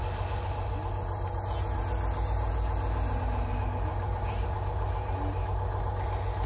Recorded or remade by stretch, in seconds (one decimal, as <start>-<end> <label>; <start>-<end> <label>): 0.0-6.5 recorded